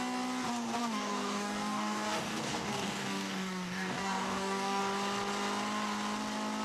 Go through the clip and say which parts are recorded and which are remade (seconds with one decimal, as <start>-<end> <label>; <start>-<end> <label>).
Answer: 0.0-0.8 recorded; 0.8-4.8 remade; 4.8-6.6 recorded